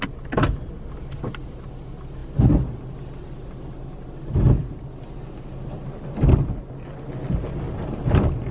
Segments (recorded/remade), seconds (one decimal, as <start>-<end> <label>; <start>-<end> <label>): 0.0-8.5 recorded